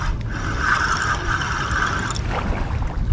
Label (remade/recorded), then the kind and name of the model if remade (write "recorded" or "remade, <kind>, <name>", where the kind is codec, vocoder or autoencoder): recorded